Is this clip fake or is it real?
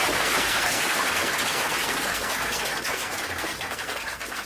fake